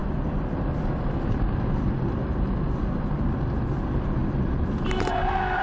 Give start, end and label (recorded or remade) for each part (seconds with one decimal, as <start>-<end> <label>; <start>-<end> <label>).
0.0-2.2 remade; 2.2-5.6 recorded